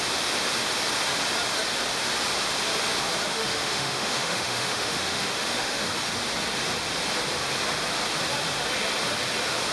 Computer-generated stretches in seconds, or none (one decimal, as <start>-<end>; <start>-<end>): 3.3-5.9